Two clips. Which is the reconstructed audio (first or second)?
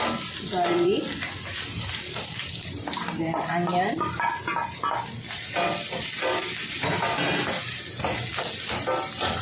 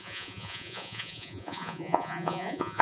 second